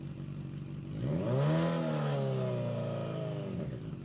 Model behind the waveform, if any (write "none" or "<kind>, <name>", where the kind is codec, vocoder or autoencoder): none